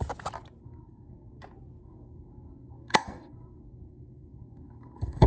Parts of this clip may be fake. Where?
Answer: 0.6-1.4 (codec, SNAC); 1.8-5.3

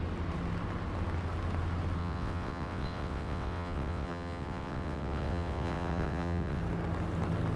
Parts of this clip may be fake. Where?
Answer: 2.0-6.6 (vocoder, WaveNeXt)